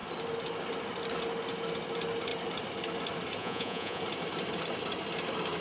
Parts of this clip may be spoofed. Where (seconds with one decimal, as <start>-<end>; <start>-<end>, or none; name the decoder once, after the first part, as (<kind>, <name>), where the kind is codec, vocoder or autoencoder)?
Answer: 3.4-4.0 (vocoder, Vocos)